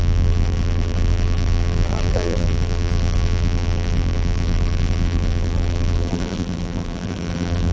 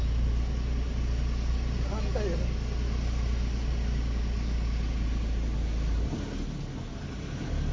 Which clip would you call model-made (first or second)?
first